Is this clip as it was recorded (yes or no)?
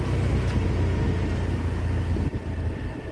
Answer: yes